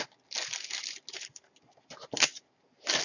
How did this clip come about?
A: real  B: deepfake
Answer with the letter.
A